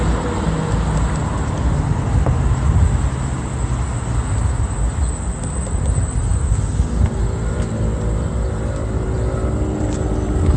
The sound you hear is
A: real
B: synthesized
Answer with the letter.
A